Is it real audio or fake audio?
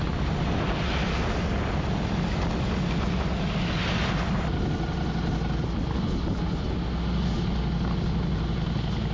real